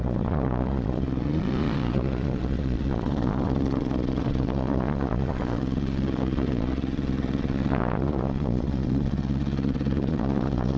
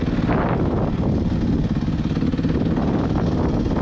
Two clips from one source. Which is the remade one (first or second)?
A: first